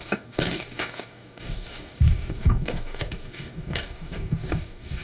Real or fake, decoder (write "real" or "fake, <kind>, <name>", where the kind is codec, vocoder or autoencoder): fake, codec, DAC